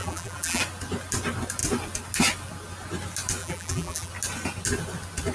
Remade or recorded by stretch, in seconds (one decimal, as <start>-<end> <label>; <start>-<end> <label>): 0.0-0.6 remade; 0.6-3.4 recorded; 3.4-4.1 remade; 4.1-5.3 recorded